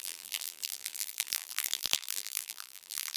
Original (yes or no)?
no